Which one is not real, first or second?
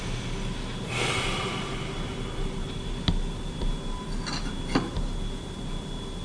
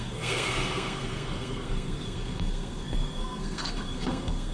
second